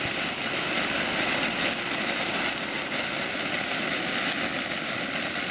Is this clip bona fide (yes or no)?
yes